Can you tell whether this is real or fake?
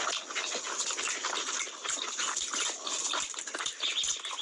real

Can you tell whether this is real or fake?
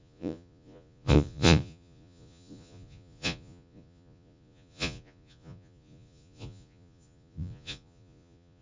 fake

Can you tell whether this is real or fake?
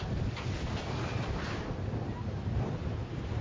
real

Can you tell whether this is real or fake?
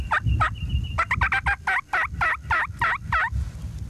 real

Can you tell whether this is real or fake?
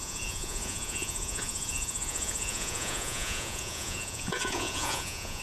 fake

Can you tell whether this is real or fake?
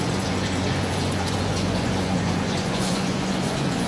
fake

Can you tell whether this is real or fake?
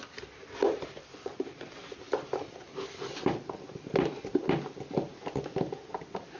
real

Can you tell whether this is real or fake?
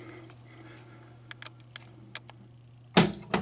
real